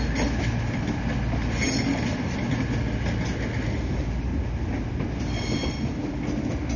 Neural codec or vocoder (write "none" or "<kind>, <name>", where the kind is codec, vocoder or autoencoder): none